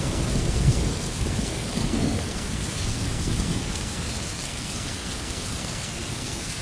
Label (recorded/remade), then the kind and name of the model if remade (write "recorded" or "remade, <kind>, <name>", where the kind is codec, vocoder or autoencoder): remade, codec, SNAC